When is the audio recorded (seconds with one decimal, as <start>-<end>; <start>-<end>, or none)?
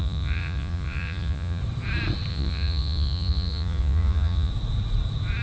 1.6-2.3; 4.5-5.4